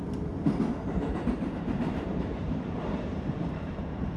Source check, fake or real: fake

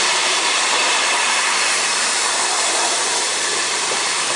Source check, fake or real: fake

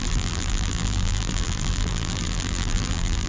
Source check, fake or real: fake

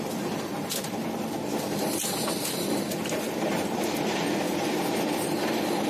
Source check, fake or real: real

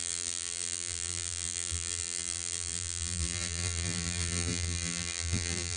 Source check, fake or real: fake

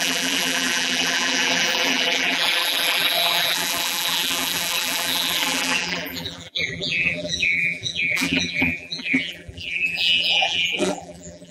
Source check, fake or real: fake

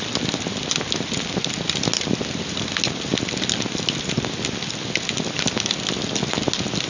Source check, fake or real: real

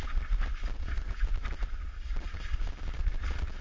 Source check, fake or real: real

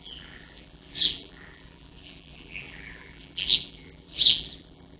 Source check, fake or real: fake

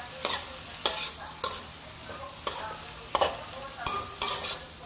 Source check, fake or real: real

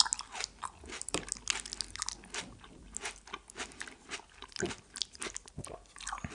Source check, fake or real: real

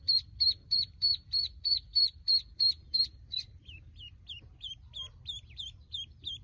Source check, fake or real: fake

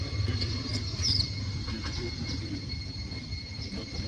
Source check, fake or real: fake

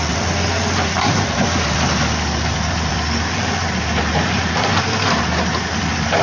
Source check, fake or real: fake